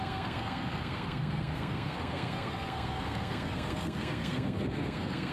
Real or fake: fake